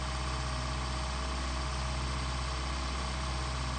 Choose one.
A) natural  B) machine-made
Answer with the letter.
A